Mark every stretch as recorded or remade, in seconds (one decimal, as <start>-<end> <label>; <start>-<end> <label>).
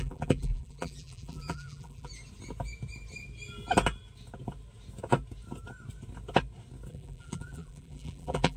0.0-2.1 remade; 2.1-6.9 recorded; 6.9-8.6 remade